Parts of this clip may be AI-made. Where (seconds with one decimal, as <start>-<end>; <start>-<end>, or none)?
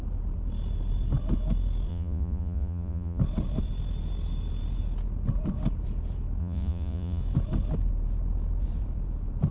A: 1.9-3.2; 6.4-7.2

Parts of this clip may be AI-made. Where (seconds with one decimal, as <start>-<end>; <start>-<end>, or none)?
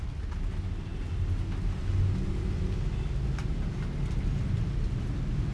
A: none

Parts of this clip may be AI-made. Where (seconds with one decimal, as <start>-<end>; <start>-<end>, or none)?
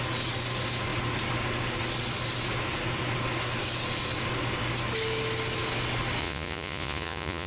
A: 6.2-7.5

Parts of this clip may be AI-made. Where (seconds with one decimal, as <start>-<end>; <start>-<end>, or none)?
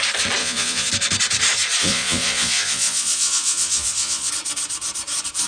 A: 0.4-0.9; 1.8-4.3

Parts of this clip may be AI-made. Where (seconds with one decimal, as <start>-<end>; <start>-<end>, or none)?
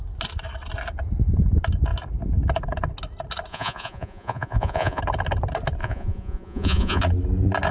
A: 3.5-5.0; 5.8-7.0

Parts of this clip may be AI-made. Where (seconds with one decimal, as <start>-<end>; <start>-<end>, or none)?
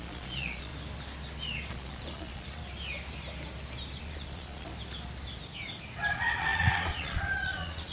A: 0.0-0.7; 1.7-2.6; 4.0-4.7; 6.1-7.9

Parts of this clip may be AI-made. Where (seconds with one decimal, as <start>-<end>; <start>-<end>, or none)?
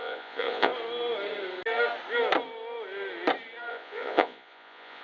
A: 0.0-0.7; 3.7-5.0